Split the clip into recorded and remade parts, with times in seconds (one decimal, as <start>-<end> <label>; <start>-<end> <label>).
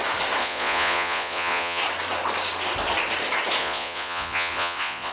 0.0-0.4 recorded; 0.4-1.8 remade; 1.8-3.6 recorded; 3.6-5.1 remade